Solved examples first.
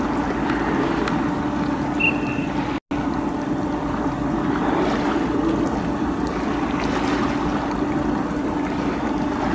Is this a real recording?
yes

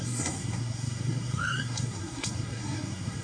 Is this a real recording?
no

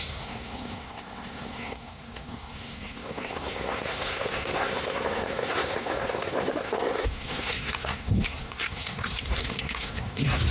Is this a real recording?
no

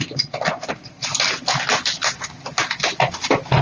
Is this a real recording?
yes